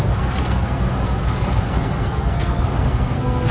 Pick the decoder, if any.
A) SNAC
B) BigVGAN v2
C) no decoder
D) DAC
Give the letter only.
A